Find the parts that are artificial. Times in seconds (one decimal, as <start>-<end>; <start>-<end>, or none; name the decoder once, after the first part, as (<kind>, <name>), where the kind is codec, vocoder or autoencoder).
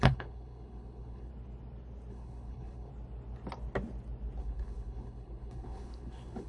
0.0-1.3 (codec, HILCodec); 2.1-2.9; 4.4-6.5